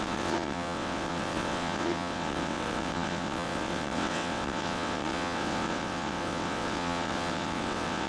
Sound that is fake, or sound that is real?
fake